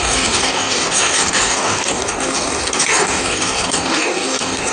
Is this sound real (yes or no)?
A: no